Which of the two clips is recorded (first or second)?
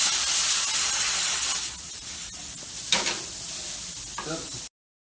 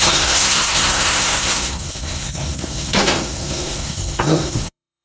first